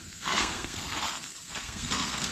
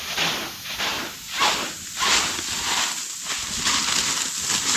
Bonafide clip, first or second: second